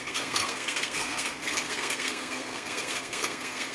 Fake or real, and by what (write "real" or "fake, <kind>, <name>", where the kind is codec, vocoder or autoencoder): fake, codec, SNAC